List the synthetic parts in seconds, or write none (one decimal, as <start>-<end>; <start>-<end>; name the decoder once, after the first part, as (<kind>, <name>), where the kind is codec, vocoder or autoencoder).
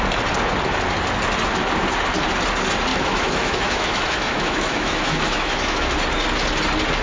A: 2.9-6.0 (autoencoder, DAC-VAE)